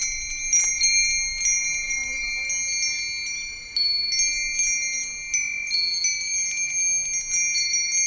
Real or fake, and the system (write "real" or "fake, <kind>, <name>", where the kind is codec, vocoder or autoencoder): real